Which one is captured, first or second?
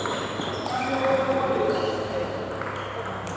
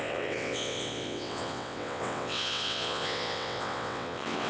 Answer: first